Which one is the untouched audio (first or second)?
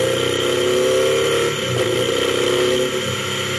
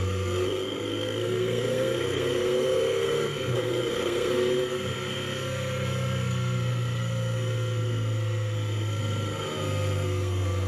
first